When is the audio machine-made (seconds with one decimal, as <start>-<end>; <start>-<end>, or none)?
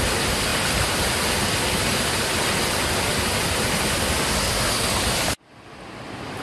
none